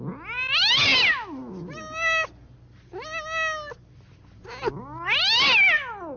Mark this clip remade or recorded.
recorded